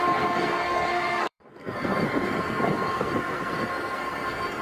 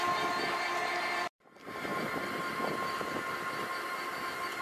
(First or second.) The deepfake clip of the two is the first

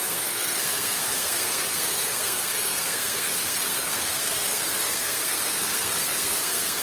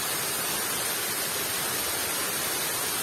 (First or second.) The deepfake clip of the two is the first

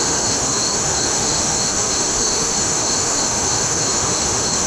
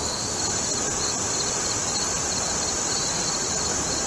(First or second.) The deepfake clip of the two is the first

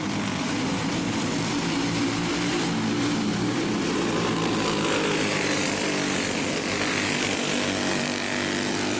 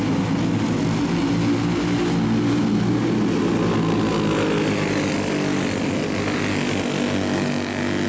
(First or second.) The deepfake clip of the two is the first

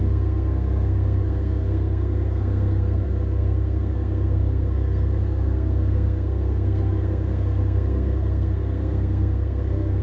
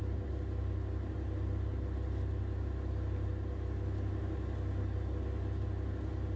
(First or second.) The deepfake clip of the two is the first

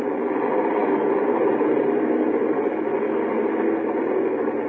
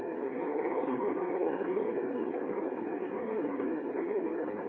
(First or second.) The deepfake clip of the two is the second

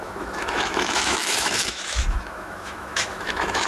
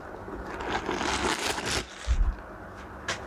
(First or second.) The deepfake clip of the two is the first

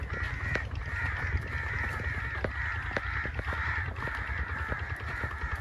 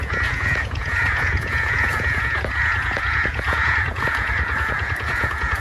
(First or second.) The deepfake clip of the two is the second